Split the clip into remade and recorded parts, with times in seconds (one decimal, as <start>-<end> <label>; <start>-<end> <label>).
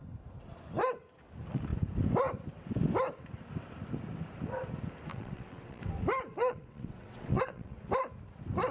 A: 0.0-5.1 recorded; 5.1-5.8 remade; 5.8-6.3 recorded; 6.3-7.9 remade; 7.9-8.7 recorded